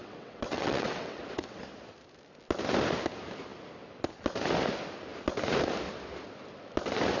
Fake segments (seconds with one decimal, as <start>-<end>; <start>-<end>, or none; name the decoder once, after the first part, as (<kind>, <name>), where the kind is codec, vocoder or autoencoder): 0.0-1.6 (vocoder, WaveNeXt)